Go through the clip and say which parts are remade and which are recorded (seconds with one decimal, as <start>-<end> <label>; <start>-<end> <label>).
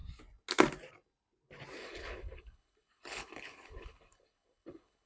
0.0-1.8 recorded; 1.8-5.1 remade